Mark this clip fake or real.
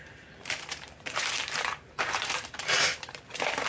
fake